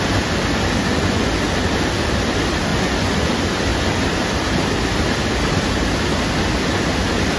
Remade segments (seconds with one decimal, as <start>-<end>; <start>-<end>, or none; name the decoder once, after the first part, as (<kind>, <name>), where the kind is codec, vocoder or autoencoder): 0.8-1.3 (vocoder, Vocos); 2.7-3.3